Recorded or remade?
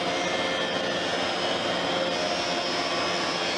recorded